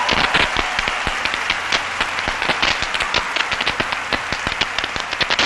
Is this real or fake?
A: real